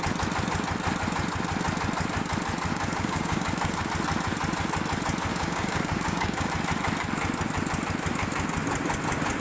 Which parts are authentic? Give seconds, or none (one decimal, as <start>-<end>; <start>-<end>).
0.0-2.7; 3.9-5.3; 6.5-9.4

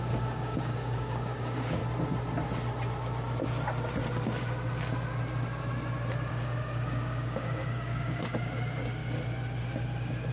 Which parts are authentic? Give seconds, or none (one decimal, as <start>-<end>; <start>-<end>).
1.8-6.3; 9.0-10.3